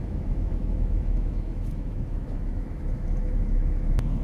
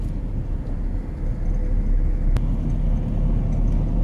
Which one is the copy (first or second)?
first